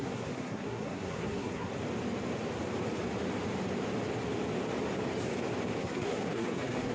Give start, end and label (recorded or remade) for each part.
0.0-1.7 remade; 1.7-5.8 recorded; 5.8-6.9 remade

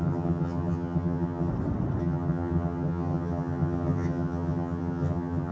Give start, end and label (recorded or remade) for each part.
0.0-1.5 remade; 1.5-2.0 recorded; 2.0-5.5 remade